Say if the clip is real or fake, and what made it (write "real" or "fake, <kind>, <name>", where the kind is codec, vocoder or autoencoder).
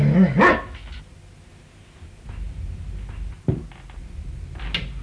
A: real